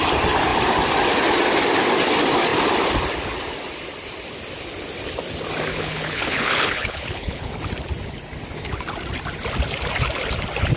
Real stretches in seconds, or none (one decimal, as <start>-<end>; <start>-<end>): 0.0-5.7; 7.5-10.8